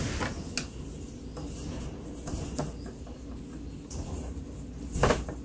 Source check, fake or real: real